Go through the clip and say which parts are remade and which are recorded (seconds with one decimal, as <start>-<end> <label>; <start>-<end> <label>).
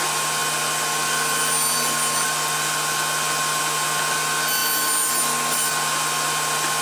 0.0-6.8 recorded